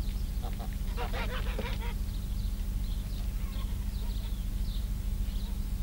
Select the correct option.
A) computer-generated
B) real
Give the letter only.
B